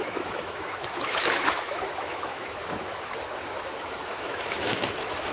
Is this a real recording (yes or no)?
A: no